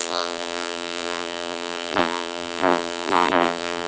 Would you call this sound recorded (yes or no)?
no